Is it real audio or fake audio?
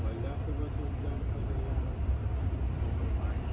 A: real